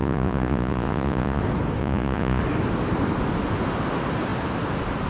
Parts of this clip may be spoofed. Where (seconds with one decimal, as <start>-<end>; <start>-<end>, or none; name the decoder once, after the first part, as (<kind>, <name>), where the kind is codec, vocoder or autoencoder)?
0.0-1.4 (vocoder, Vocos); 1.8-2.4